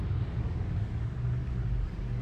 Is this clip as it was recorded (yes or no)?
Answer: no